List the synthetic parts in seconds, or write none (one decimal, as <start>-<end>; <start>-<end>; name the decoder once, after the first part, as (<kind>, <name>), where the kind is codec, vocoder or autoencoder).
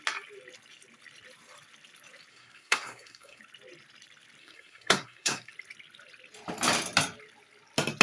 2.3-3.4 (codec, SNAC); 4.4-5.5